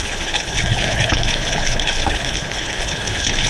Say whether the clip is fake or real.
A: fake